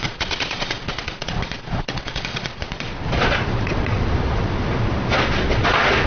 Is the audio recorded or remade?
remade